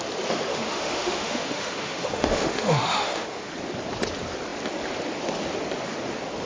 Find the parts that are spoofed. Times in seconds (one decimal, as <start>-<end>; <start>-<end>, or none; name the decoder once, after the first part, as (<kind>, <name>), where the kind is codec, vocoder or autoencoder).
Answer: 0.5-3.5 (autoencoder, DAC-VAE)